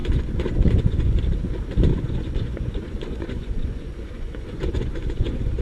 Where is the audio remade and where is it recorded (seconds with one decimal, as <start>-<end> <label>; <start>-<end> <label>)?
0.0-1.2 remade; 1.2-1.9 recorded; 1.9-5.6 remade